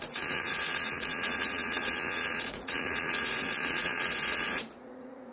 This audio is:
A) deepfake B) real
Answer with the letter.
A